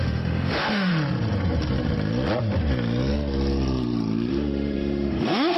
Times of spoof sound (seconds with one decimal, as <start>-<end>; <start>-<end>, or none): 0.0-0.9; 4.3-5.6